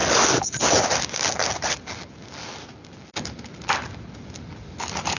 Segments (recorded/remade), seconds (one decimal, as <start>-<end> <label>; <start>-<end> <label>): 0.0-5.2 recorded